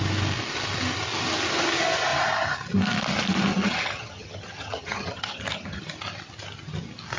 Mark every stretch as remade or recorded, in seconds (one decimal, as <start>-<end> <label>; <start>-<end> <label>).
0.0-3.5 recorded; 3.5-5.8 remade; 5.8-7.2 recorded

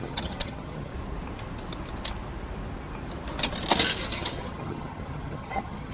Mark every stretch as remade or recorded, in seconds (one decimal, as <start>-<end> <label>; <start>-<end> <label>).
0.0-0.9 remade; 0.9-4.1 recorded; 4.1-5.9 remade